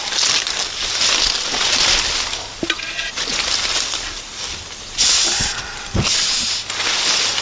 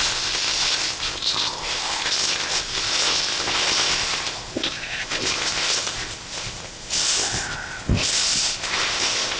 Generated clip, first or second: second